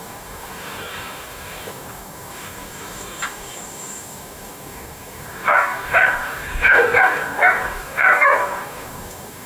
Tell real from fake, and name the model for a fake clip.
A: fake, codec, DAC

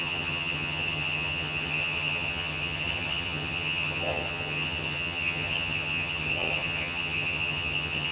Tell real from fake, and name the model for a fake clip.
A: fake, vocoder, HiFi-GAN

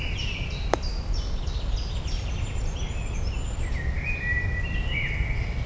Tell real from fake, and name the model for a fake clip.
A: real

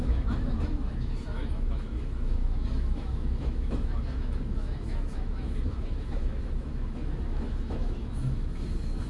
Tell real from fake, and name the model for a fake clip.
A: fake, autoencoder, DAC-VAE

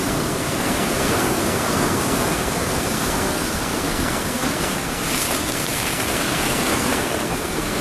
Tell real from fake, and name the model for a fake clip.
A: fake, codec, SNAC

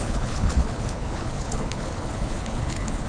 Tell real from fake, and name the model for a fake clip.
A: fake, codec, HILCodec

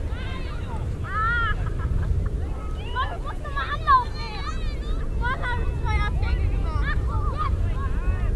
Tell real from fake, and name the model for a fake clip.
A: real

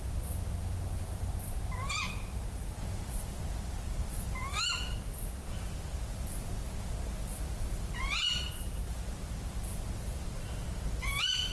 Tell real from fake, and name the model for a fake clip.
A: real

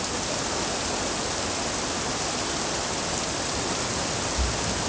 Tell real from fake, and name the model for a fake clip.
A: real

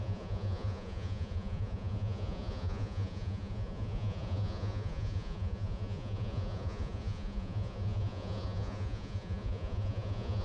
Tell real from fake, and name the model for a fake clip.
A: fake, vocoder, Vocos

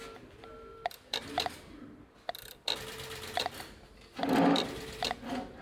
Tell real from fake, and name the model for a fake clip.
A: real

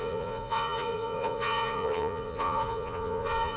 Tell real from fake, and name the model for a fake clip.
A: fake, vocoder, Vocos